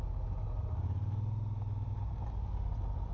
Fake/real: real